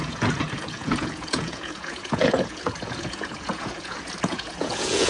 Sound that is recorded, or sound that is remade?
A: remade